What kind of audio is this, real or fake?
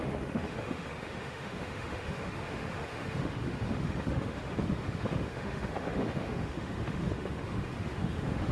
fake